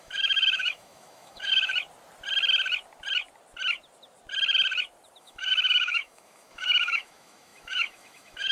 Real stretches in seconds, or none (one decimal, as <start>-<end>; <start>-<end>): 1.7-5.2